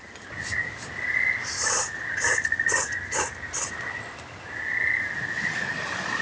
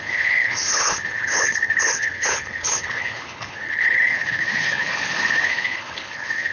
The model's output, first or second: second